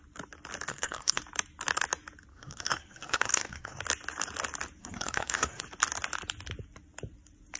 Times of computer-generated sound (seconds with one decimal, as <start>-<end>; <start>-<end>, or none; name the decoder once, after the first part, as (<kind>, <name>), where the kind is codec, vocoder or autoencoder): 0.7-1.2 (codec, SNAC); 2.3-3.8; 4.8-5.6